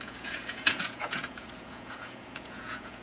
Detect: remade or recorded remade